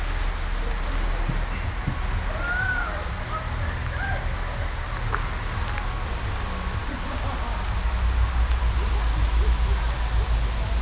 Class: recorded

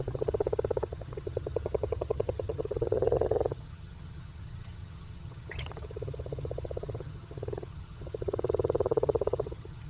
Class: remade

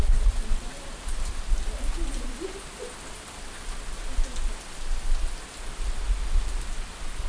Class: recorded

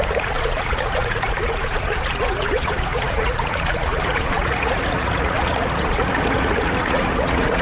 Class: remade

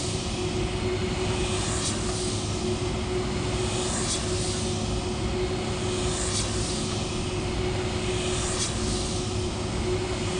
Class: recorded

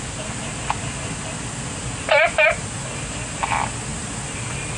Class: recorded